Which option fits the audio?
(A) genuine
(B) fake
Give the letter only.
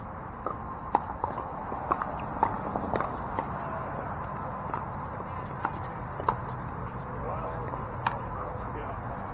A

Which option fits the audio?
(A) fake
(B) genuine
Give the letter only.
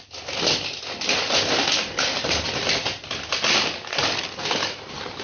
B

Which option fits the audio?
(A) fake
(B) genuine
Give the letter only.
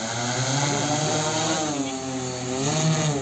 B